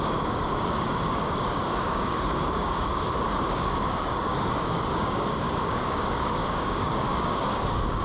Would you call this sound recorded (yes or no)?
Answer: no